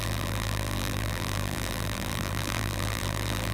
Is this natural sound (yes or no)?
no